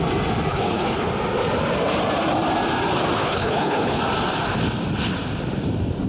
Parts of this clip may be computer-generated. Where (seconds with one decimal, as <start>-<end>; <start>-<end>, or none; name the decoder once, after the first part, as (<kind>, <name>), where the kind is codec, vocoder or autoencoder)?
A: 0.5-1.1 (codec, HILCodec); 3.2-4.0